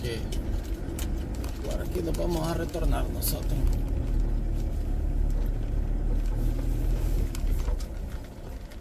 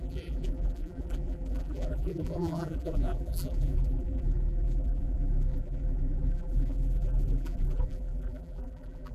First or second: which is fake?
second